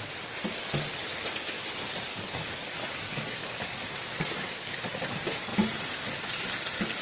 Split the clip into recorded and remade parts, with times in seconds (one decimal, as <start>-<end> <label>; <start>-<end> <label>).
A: 0.0-2.1 recorded; 2.1-4.8 remade; 4.8-7.0 recorded